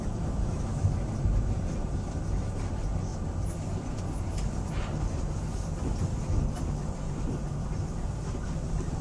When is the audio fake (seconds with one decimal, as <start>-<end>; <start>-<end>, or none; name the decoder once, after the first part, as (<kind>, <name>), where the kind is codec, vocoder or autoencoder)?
none